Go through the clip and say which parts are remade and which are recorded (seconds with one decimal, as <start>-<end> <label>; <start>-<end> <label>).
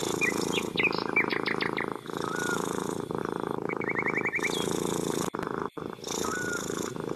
0.0-7.2 recorded